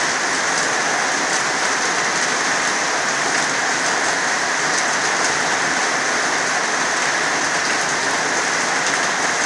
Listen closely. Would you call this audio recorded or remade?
recorded